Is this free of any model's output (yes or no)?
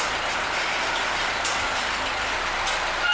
yes